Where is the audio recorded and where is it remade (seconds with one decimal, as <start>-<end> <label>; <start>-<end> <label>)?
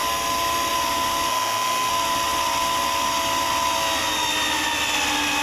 0.0-1.3 recorded; 1.3-1.9 remade; 1.9-5.4 recorded